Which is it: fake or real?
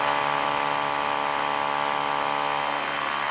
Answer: real